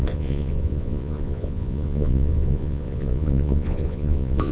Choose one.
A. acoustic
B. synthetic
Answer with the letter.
B